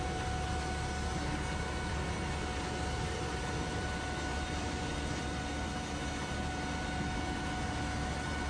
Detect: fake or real real